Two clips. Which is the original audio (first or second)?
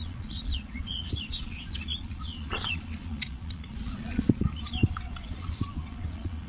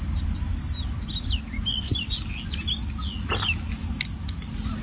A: second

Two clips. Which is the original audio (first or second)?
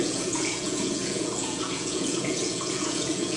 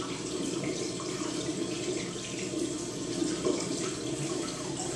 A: second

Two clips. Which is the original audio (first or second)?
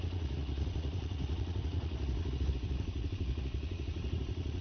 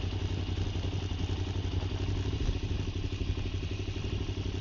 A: second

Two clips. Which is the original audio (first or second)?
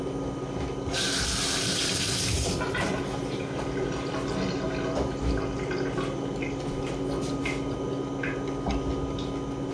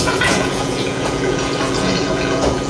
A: first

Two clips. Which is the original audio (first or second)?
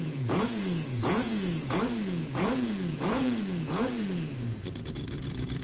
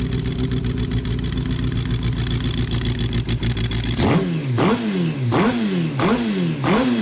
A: second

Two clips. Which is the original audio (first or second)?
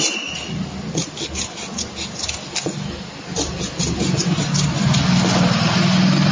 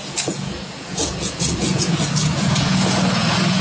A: first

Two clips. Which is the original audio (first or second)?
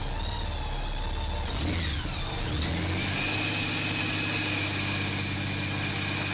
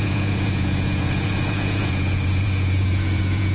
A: first